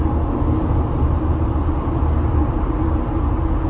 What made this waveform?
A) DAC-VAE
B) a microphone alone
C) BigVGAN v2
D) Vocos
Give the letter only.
B